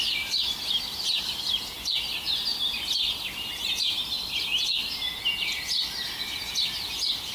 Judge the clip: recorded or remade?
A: recorded